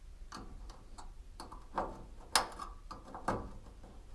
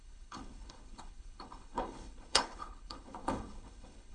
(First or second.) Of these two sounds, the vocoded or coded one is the second